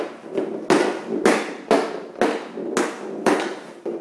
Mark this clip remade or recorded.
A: recorded